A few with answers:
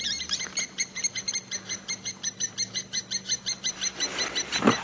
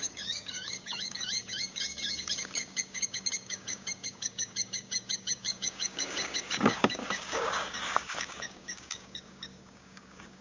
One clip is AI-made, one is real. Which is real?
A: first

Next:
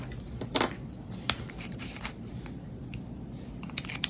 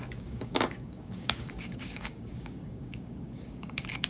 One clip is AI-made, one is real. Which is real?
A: first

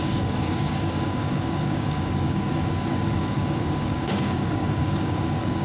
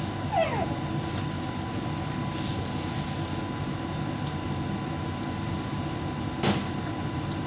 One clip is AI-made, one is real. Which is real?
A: second